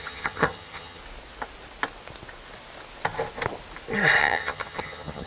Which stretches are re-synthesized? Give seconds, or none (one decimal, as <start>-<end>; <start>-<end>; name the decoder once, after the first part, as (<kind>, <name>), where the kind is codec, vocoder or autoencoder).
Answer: 0.0-1.0 (vocoder, HiFi-GAN); 4.2-5.3